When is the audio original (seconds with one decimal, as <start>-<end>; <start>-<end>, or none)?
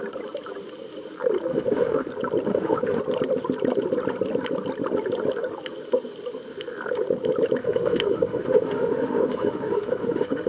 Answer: 0.0-1.5; 2.1-2.5; 3.0-7.6